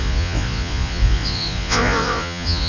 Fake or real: fake